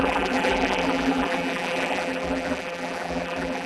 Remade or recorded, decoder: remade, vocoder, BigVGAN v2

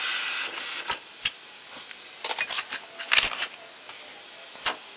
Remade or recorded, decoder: recorded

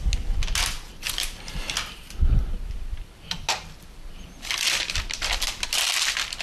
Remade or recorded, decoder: recorded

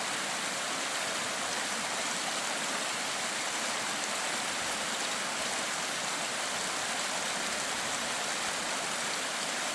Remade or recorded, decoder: recorded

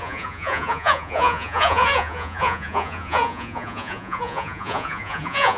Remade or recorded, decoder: remade, vocoder, Vocos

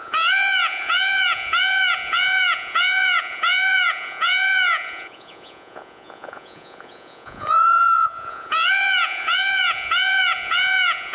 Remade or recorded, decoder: remade, vocoder, Vocos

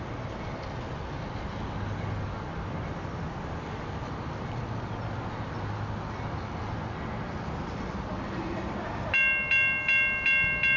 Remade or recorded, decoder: recorded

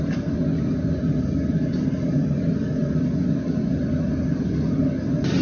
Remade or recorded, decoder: recorded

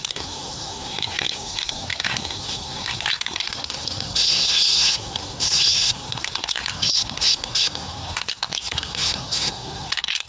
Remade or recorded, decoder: remade, codec, SNAC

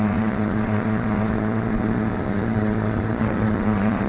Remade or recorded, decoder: remade, vocoder, Vocos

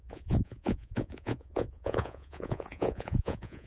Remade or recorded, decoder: remade, vocoder, Vocos